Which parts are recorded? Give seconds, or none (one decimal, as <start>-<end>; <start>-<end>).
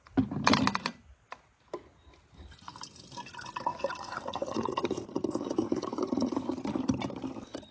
0.0-3.7; 6.8-7.7